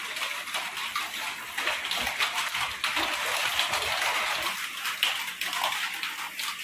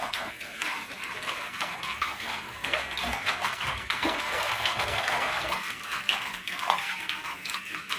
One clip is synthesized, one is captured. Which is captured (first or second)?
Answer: first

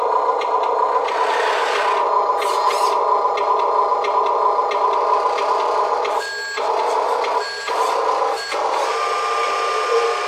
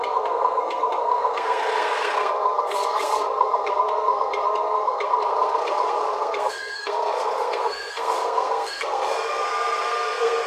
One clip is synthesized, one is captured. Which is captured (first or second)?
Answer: first